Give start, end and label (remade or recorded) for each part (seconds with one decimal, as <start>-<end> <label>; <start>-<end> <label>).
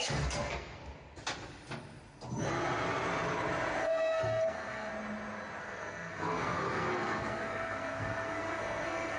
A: 0.0-0.8 remade; 0.8-3.8 recorded; 3.8-4.9 remade; 4.9-5.6 recorded; 5.6-9.2 remade